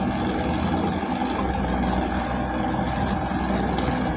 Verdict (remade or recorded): recorded